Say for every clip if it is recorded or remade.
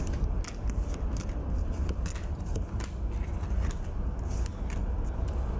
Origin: recorded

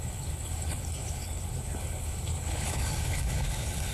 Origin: remade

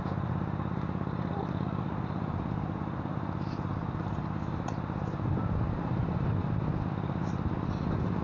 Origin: recorded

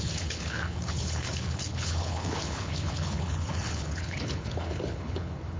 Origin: remade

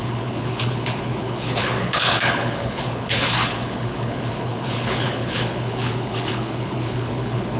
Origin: remade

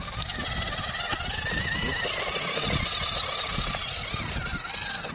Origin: recorded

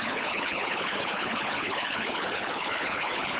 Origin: remade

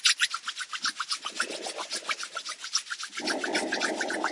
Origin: recorded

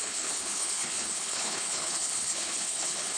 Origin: remade